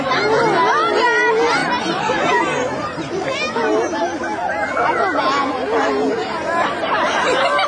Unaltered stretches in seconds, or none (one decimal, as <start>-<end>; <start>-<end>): 0.0-1.6; 3.0-7.7